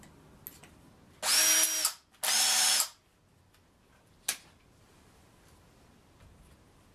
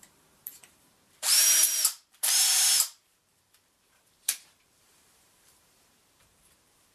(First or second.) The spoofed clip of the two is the second